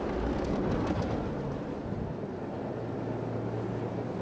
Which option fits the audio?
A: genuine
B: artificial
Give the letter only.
A